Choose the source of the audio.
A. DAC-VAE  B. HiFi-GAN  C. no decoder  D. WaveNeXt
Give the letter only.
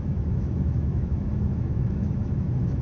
A